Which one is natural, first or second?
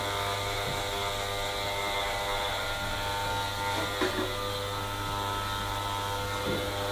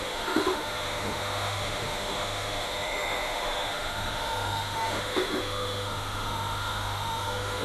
first